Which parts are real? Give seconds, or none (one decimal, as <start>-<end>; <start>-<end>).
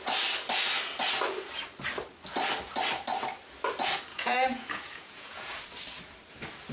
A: 0.0-4.1; 5.5-6.7